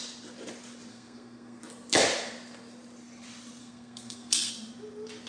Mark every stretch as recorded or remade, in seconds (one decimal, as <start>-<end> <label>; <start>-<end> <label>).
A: 0.0-0.9 recorded; 0.9-1.6 remade; 1.6-3.6 recorded; 3.6-4.5 remade; 4.5-5.3 recorded